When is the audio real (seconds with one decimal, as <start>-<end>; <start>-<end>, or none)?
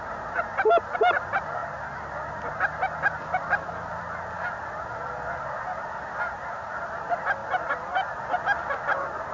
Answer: 0.0-9.3